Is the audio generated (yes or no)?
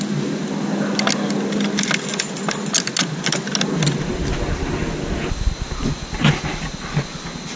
no